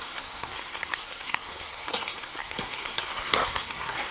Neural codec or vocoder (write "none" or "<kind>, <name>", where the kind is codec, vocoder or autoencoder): codec, SNAC